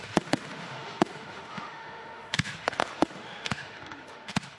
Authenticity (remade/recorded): remade